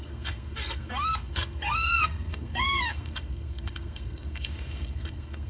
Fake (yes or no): yes